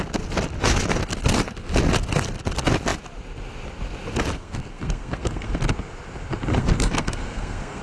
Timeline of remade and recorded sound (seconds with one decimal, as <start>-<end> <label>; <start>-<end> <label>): 0.0-4.3 recorded; 4.3-5.6 remade; 5.6-6.5 recorded; 6.5-7.8 remade